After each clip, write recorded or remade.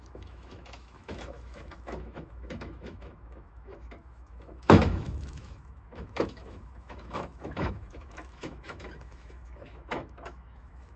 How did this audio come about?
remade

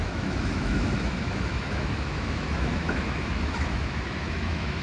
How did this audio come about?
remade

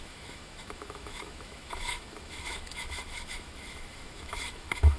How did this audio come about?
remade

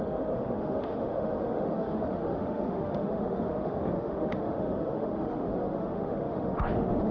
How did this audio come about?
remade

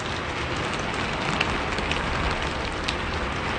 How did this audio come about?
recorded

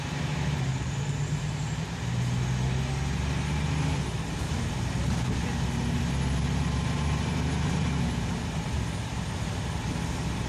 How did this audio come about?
recorded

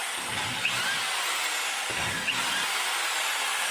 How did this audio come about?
recorded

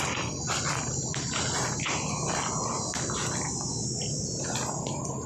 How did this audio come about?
recorded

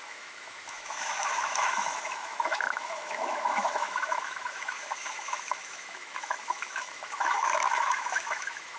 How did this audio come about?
remade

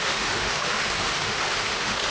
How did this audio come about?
remade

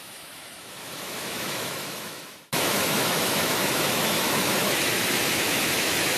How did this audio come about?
remade